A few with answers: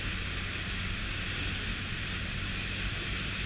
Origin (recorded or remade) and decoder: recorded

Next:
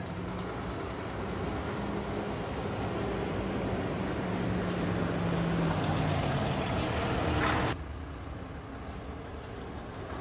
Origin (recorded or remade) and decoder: recorded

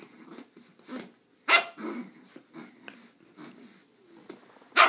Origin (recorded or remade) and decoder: recorded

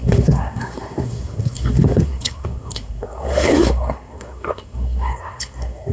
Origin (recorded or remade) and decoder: remade, codec, SNAC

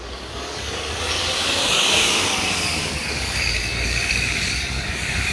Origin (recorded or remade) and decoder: remade, codec, DAC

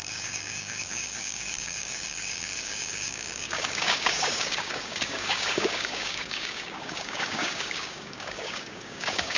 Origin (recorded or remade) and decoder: remade, codec, DAC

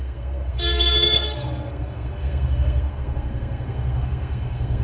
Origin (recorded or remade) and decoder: remade, codec, SNAC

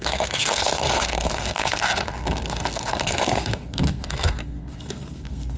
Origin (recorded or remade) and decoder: remade, codec, SNAC